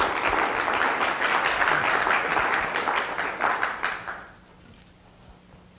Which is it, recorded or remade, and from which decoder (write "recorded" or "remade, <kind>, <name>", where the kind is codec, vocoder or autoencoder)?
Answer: recorded